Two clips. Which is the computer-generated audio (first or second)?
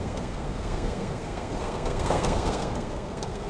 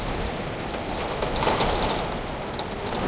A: first